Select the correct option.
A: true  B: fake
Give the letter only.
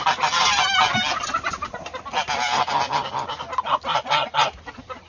A